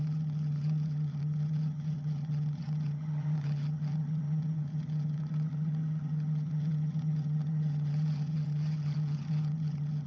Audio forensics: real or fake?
fake